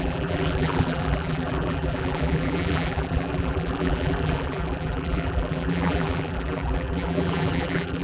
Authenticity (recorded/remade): remade